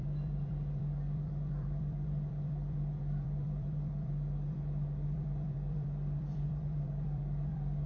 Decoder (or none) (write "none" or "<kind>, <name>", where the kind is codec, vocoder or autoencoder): vocoder, BigVGAN v2